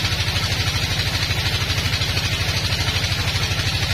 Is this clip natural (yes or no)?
yes